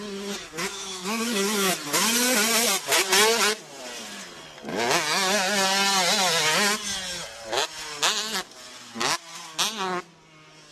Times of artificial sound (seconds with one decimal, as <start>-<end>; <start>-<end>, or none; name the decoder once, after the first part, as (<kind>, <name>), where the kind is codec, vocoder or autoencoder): 0.7-1.7 (autoencoder, DAC-VAE)